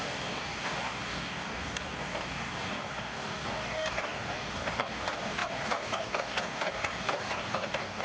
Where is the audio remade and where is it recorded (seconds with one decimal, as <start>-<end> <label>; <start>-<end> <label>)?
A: 0.0-8.0 remade